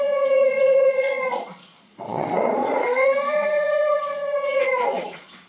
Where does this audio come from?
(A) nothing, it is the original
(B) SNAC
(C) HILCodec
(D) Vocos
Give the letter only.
D